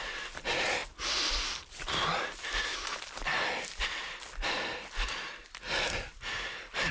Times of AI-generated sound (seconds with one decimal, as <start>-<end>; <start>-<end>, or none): none